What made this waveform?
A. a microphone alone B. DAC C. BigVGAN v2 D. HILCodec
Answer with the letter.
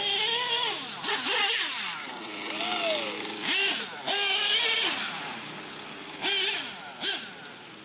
A